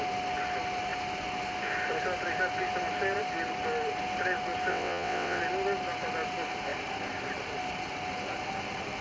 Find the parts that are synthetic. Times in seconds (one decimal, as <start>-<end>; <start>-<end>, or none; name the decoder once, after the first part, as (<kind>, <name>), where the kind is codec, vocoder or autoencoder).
4.7-5.4 (vocoder, WaveNeXt)